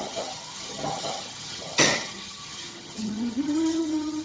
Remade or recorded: remade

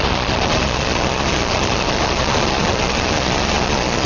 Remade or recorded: remade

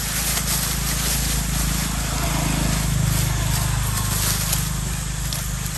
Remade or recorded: recorded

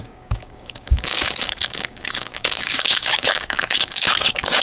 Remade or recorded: remade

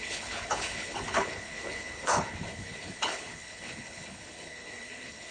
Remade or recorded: remade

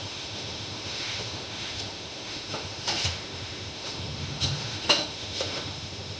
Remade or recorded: remade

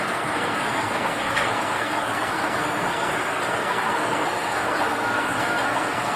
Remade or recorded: remade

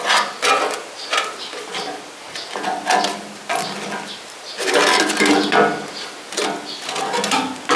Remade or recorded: recorded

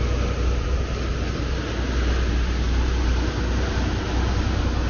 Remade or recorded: recorded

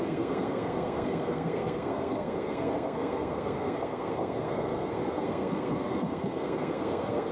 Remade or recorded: remade